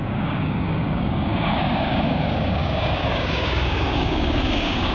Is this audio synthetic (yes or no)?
yes